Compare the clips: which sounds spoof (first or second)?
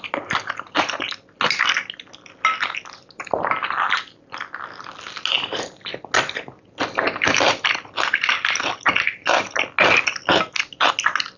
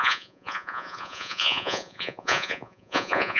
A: second